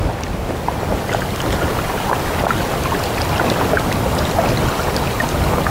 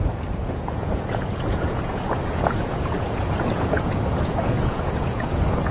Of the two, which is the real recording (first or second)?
first